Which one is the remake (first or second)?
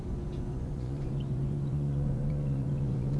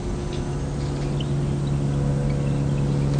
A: first